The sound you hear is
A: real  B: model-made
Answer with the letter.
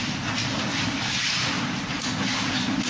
A